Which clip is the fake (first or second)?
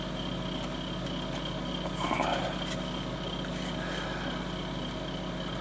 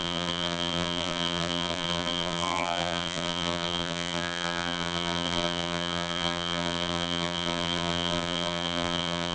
second